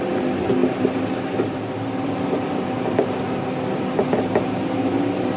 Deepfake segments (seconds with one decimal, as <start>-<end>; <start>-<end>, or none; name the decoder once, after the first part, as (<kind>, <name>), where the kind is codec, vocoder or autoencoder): none